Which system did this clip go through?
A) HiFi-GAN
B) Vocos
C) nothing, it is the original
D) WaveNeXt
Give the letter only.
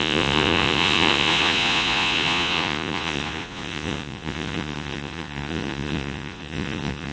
B